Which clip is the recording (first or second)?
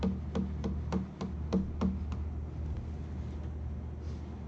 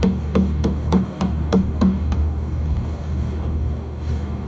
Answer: first